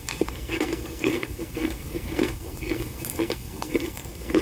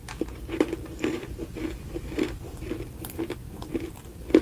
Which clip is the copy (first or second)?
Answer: first